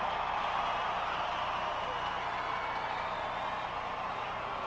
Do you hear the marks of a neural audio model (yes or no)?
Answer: no